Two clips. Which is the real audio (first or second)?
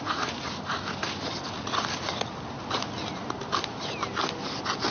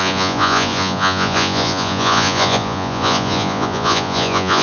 first